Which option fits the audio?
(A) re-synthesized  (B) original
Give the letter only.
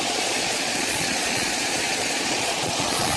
A